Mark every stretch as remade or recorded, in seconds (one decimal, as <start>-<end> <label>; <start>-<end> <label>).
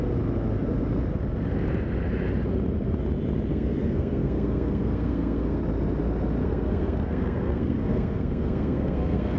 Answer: 0.0-3.5 recorded; 3.5-5.6 remade; 5.6-6.4 recorded; 6.4-9.4 remade